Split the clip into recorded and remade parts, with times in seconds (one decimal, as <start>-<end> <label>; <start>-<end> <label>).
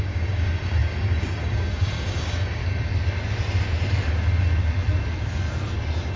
0.0-2.6 remade; 2.6-6.2 recorded